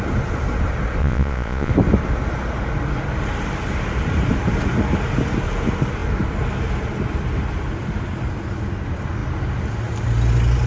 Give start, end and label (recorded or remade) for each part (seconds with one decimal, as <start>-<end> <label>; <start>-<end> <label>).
0.0-1.0 recorded; 1.0-1.7 remade; 1.7-10.7 recorded